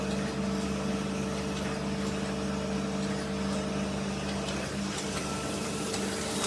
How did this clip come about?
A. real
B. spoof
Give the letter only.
A